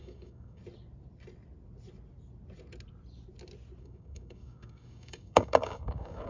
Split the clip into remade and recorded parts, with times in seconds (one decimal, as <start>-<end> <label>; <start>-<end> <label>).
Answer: 0.0-0.6 remade; 0.6-3.8 recorded; 3.8-6.3 remade